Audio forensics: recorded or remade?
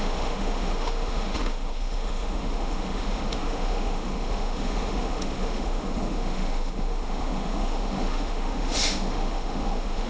remade